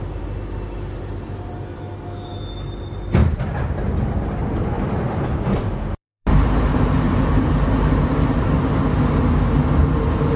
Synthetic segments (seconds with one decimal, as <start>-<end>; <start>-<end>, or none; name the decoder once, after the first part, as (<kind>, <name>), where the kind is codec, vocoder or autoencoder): 3.2-8.5 (vocoder, BigVGAN v2)